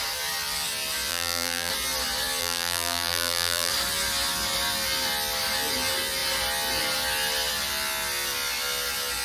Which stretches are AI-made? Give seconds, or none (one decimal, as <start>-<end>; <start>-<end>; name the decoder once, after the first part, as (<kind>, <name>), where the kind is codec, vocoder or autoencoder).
1.1-1.7 (vocoder, BigVGAN v2); 2.4-3.7